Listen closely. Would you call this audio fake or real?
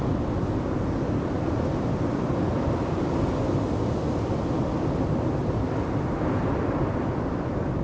real